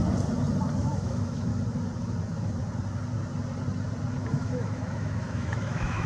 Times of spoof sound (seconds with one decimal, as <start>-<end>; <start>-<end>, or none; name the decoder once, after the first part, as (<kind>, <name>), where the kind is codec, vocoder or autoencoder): 0.8-1.5 (autoencoder, DAC-VAE); 4.1-6.1